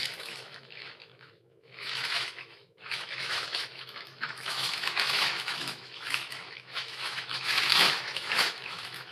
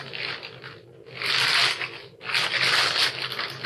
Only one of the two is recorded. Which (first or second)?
second